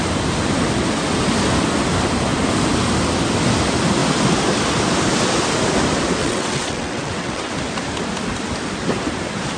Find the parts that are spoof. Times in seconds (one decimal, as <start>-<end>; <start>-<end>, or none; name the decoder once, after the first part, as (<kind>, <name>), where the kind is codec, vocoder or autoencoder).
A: 6.2-7.5 (vocoder, WaveNeXt)